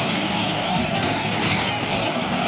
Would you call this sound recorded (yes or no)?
no